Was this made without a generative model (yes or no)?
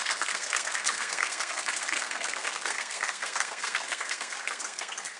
no